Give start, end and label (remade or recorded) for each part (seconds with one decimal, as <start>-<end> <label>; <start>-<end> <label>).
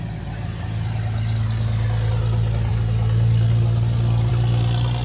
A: 0.0-5.0 recorded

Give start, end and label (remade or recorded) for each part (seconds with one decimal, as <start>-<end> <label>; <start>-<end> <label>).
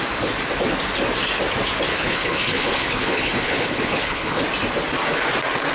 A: 0.0-1.9 recorded; 1.9-4.4 remade; 4.4-5.7 recorded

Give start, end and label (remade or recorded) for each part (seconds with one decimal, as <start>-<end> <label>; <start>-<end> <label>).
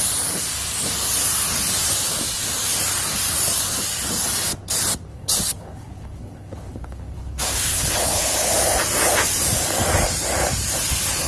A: 0.0-5.1 recorded; 5.1-8.5 remade; 8.5-11.3 recorded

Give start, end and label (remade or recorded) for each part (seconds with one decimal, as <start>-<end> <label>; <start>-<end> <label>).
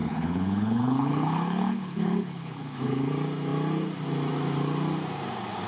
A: 0.0-3.1 remade; 3.1-5.7 recorded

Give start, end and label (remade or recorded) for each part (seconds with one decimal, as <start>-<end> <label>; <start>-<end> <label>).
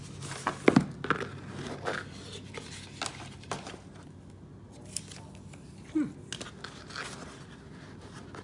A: 0.0-8.4 recorded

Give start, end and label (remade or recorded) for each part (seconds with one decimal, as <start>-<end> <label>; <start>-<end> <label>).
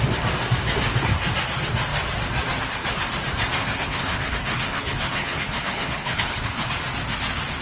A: 0.0-3.6 recorded; 3.6-6.7 remade; 6.7-7.6 recorded